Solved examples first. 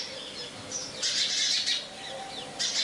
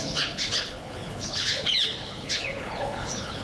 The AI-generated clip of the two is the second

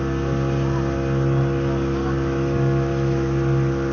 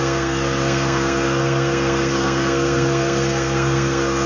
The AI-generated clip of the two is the second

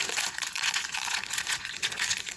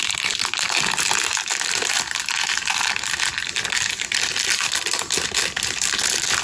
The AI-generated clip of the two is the first